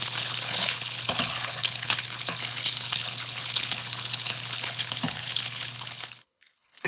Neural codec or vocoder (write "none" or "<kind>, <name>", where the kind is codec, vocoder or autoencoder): codec, HILCodec